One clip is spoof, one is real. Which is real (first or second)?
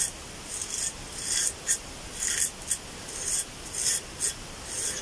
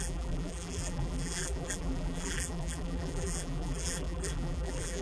first